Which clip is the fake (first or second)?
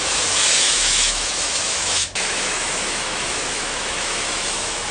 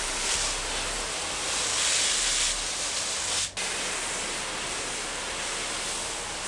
first